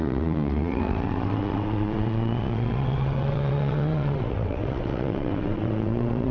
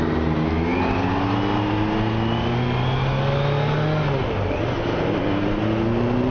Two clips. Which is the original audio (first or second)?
second